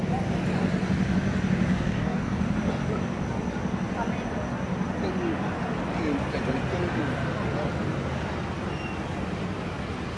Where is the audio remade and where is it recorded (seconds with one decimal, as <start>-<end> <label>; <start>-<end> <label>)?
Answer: 0.0-1.7 recorded; 1.7-2.4 remade; 2.4-10.2 recorded